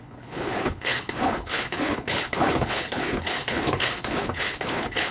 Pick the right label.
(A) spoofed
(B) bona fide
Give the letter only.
A